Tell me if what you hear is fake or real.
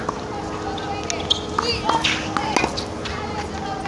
real